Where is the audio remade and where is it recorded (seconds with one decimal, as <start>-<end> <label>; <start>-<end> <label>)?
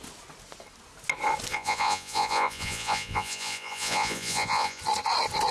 0.0-1.5 recorded; 1.5-4.8 remade; 4.8-5.5 recorded